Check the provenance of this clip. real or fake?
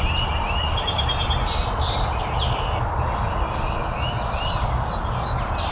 real